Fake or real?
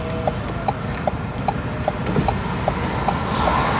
real